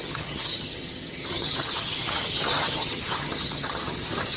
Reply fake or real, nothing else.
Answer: fake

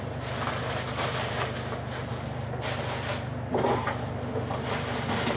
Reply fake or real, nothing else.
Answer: real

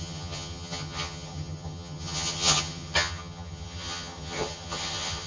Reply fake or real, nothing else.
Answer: fake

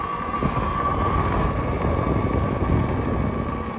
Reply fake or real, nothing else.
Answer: real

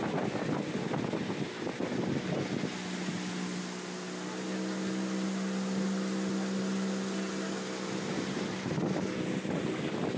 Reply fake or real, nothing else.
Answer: real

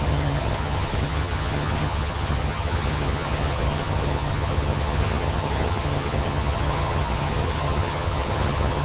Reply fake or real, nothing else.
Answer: fake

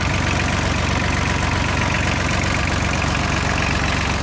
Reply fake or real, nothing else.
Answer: real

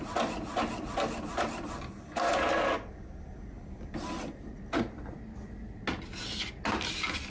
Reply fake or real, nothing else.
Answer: real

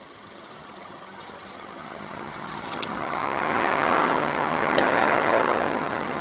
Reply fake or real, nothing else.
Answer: fake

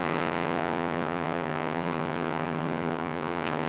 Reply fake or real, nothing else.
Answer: fake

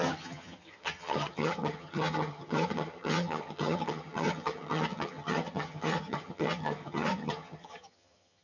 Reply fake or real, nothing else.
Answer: fake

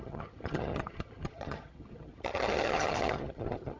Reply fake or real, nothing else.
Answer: fake